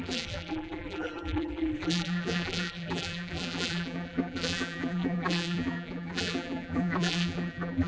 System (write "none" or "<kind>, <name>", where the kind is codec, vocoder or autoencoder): vocoder, BigVGAN v2